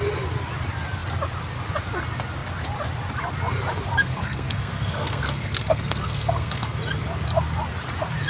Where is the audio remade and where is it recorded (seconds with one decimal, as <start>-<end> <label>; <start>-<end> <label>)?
0.0-3.9 recorded; 3.9-6.8 remade; 6.8-8.3 recorded